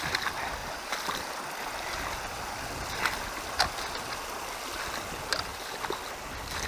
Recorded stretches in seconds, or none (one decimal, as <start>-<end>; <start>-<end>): 0.0-0.6; 1.3-6.7